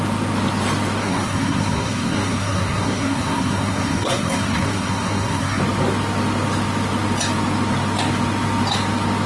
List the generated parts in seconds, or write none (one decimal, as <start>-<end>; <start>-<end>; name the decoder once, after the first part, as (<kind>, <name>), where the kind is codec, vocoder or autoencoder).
1.0-5.6 (codec, SNAC)